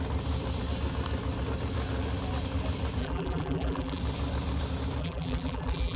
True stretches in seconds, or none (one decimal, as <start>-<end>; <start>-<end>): 0.0-3.0; 4.0-5.0